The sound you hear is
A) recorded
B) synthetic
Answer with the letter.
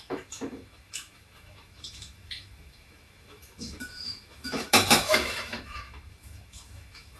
B